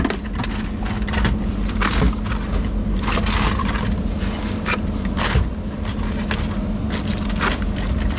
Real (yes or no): yes